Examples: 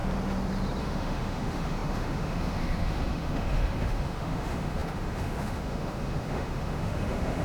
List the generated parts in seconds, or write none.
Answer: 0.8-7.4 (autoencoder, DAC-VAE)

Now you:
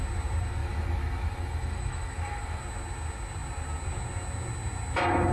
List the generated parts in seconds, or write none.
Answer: 0.6-2.6 (autoencoder, DAC-VAE)

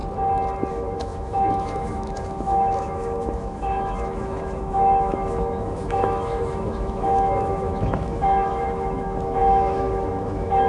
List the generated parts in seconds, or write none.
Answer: 0.7-10.7 (autoencoder, DAC-VAE)

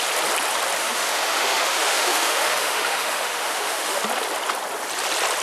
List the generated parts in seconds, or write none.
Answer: 0.8-4.0 (autoencoder, DAC-VAE)